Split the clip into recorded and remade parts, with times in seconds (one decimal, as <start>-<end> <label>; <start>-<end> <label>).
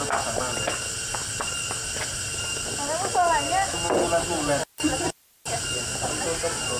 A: 0.0-6.8 recorded